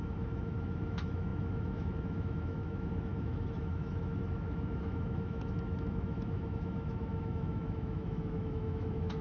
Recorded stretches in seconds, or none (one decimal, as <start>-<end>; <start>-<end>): none